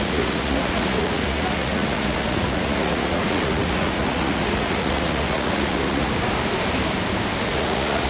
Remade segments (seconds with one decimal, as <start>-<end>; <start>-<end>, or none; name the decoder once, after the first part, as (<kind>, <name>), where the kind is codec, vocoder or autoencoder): 0.0-6.1 (vocoder, Vocos); 7.5-8.1

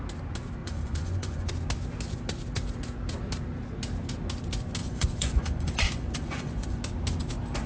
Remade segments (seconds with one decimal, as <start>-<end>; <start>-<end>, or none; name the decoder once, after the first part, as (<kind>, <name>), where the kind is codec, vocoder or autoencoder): 0.6-1.5 (vocoder, Vocos); 4.8-6.8

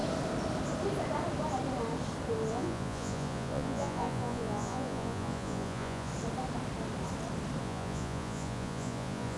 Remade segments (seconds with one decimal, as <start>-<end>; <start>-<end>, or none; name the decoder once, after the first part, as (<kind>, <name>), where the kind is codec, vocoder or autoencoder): 2.5-6.1 (vocoder, Vocos); 7.6-9.4

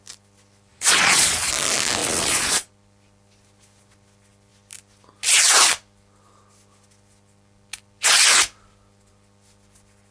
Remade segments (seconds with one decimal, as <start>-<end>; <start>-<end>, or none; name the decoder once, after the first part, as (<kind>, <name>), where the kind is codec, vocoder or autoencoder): 0.7-1.5 (vocoder, Vocos); 2.0-2.7